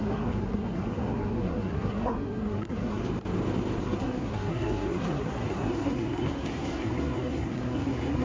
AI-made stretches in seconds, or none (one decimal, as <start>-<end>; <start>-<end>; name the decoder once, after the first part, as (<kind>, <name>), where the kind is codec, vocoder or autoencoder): 0.0-3.0 (codec, SNAC); 3.8-8.2